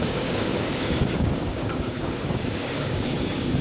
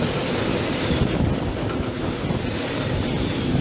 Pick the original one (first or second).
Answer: second